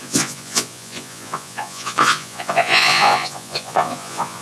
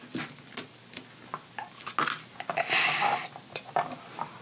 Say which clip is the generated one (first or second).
first